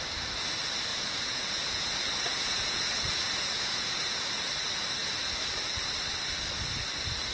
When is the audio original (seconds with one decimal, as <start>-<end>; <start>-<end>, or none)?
0.0-0.9; 4.4-7.3